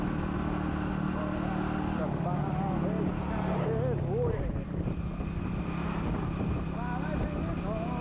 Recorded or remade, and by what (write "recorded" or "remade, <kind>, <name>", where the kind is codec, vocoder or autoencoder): recorded